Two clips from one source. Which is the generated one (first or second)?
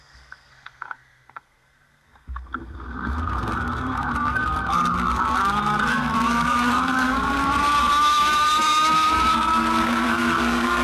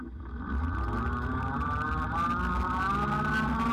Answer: first